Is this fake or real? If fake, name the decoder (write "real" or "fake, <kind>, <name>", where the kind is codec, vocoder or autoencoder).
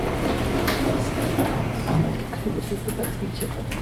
real